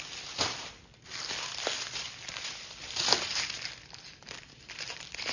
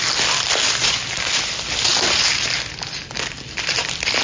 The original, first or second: second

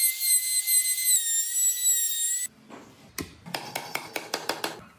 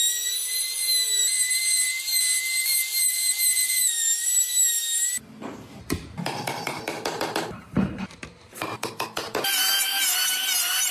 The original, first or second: first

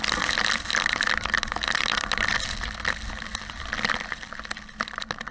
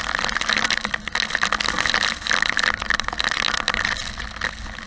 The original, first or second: second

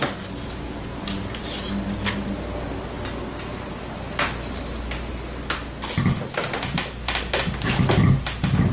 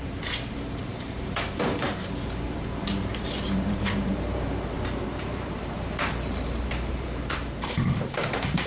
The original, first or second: first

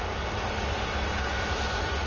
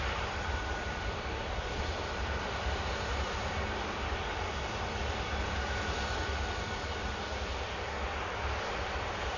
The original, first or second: first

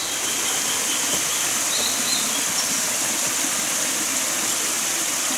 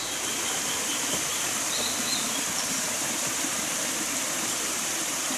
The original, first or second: first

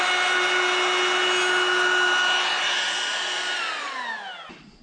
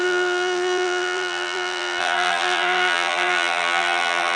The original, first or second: first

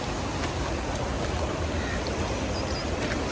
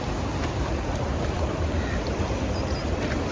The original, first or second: first